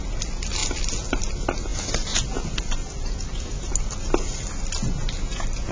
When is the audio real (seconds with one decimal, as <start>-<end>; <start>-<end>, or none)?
0.0-5.7